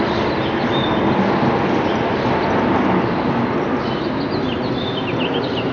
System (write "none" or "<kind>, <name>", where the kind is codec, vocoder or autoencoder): none